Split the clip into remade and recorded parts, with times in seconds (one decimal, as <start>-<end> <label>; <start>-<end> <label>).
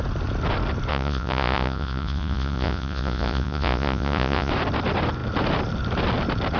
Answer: 0.0-0.9 recorded; 0.9-4.5 remade; 4.5-6.6 recorded